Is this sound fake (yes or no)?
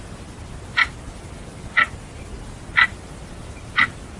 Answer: no